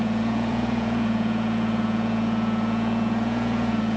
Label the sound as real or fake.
fake